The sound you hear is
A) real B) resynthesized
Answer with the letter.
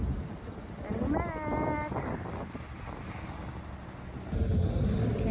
A